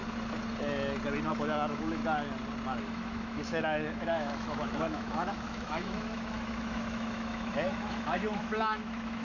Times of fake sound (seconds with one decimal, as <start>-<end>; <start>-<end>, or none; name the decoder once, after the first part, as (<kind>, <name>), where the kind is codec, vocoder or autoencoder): 1.3-2.0 (autoencoder, DAC-VAE); 2.8-9.2